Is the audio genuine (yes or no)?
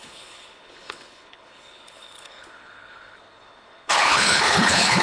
no